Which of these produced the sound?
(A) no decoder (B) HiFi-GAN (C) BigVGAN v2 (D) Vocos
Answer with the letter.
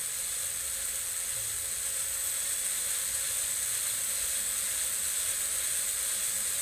A